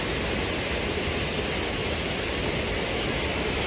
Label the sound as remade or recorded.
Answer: recorded